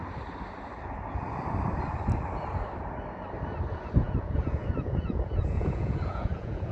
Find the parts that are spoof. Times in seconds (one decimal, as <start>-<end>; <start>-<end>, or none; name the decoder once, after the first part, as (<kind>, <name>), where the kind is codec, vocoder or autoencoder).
4.0-6.7 (vocoder, Vocos)